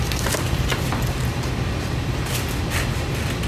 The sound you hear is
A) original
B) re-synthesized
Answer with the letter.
A